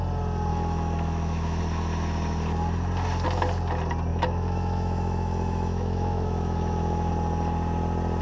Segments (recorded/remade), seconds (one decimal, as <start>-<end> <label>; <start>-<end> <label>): 0.0-0.5 recorded; 0.5-1.6 remade; 1.6-4.1 recorded; 4.1-7.1 remade; 7.1-8.2 recorded